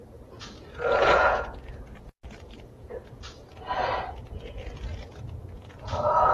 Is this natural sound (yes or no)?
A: no